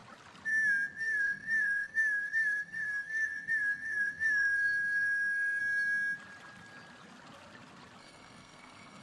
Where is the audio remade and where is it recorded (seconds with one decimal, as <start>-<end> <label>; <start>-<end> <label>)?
0.0-1.0 recorded; 1.0-5.6 remade; 5.6-8.0 recorded; 8.0-9.0 remade